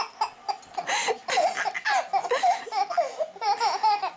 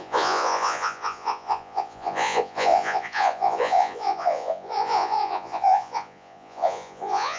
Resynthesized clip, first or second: second